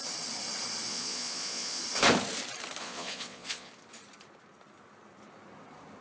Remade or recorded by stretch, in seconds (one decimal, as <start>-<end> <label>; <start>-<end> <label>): 0.0-0.9 recorded; 0.9-1.8 remade; 1.8-2.8 recorded; 2.8-3.7 remade; 3.7-6.0 recorded